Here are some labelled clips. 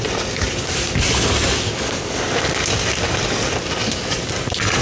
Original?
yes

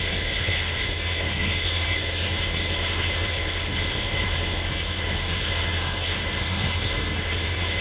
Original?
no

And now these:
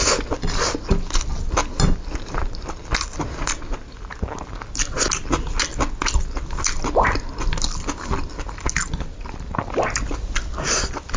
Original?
yes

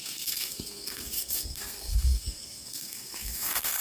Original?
no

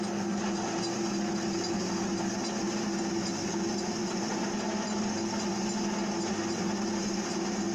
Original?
yes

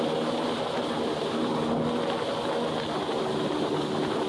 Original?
yes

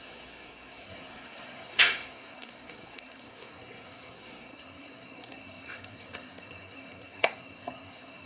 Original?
no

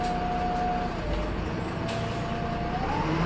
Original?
yes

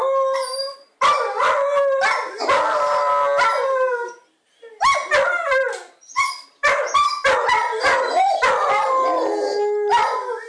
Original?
yes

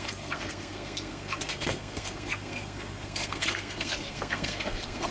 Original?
no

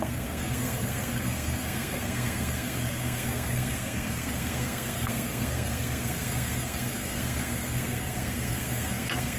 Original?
no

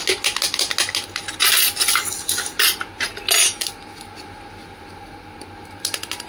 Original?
yes